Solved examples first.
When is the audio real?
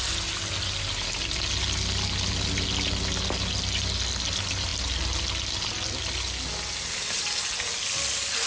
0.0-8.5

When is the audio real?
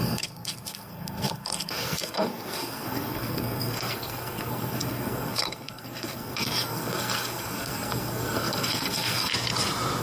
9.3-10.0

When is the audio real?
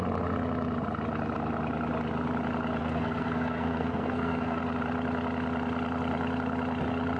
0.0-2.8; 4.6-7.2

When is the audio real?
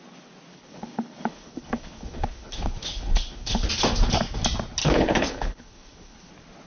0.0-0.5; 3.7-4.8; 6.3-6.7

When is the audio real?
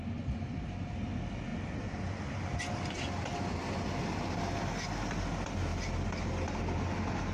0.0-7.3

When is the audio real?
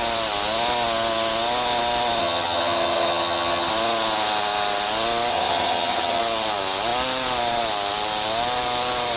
0.0-2.2; 3.7-5.3; 6.2-9.2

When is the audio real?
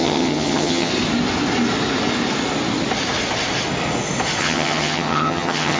0.9-4.4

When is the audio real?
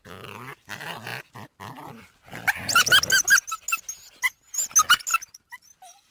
0.0-6.1